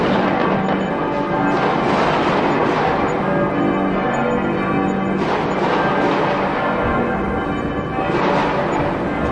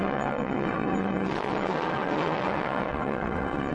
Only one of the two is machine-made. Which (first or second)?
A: second